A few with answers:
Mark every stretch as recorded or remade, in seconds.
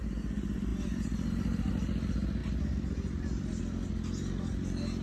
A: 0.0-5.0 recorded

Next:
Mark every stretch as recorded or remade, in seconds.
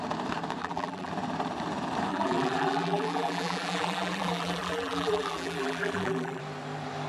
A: 0.0-0.6 recorded; 0.6-1.1 remade; 1.1-2.1 recorded; 2.1-6.4 remade; 6.4-7.1 recorded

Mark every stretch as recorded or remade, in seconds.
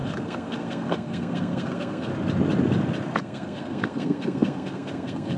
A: 0.0-2.1 remade; 2.1-3.2 recorded; 3.2-5.4 remade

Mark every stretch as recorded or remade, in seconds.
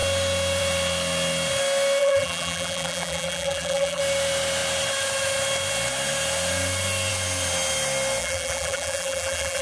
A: 0.0-2.0 recorded; 2.0-4.0 remade; 4.0-8.2 recorded; 8.2-9.6 remade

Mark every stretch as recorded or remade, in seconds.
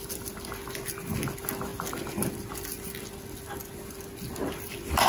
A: 0.0-5.1 recorded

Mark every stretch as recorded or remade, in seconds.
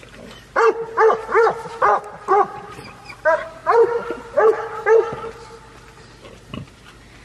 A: 0.0-7.2 recorded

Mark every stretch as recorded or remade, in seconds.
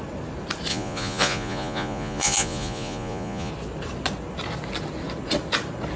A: 0.0-0.7 recorded; 0.7-3.5 remade; 3.5-6.0 recorded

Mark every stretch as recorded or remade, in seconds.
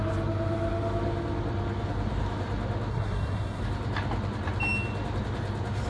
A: 0.0-2.9 recorded; 2.9-3.6 remade; 3.6-5.9 recorded